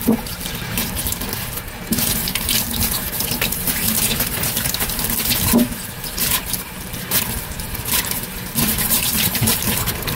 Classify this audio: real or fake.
fake